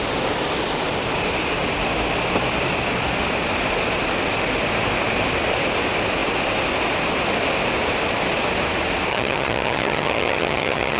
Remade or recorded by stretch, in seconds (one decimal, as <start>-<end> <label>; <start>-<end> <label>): 0.0-9.1 recorded; 9.1-11.0 remade